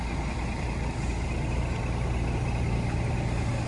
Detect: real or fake real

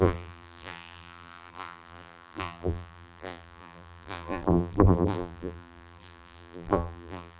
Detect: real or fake fake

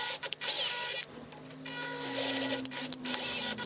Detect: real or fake real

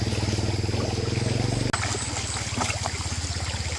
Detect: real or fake real